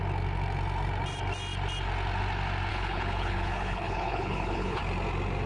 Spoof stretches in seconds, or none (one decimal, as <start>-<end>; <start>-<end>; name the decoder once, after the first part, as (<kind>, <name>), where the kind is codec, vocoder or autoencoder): 2.7-4.8 (codec, HILCodec)